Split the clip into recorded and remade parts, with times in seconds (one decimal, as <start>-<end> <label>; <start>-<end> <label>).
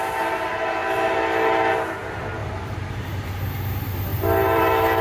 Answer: 0.0-2.4 recorded; 2.4-2.9 remade; 2.9-4.1 recorded; 4.1-4.6 remade; 4.6-5.0 recorded